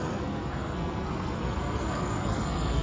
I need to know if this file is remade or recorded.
remade